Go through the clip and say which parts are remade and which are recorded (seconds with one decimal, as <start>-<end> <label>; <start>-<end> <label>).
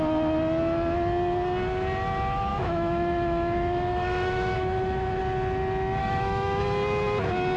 0.0-2.5 recorded; 2.5-5.2 remade; 5.2-6.0 recorded; 6.0-6.6 remade; 6.6-7.6 recorded